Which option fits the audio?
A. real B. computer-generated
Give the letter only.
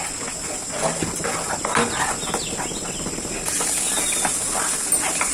A